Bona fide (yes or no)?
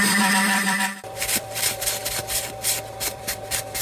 no